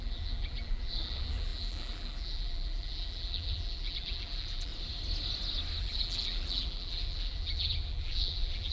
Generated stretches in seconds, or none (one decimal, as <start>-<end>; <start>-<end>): 0.0-4.7; 5.8-8.7